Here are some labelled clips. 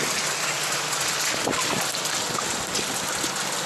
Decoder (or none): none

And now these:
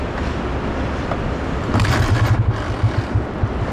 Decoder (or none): vocoder, BigVGAN v2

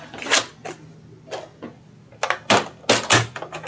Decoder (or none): none